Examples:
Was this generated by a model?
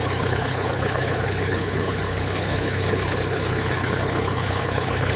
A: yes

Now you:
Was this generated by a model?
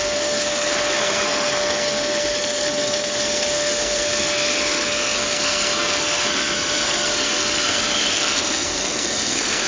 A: yes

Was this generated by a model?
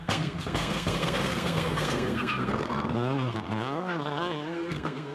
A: yes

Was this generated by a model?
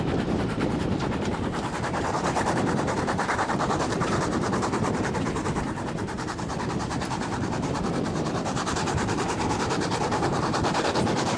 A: yes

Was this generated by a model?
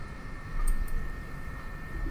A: yes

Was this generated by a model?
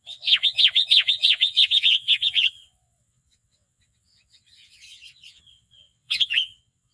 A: yes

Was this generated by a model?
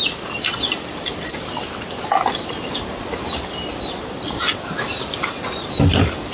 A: no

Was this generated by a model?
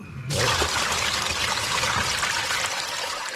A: no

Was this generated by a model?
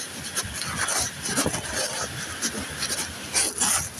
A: no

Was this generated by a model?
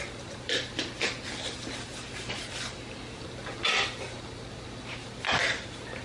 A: yes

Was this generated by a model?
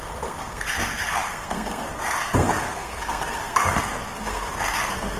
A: yes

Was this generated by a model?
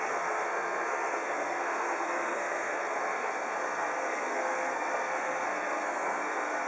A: yes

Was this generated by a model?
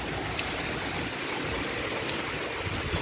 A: no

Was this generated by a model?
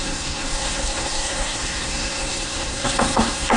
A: yes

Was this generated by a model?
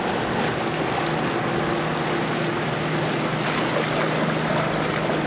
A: no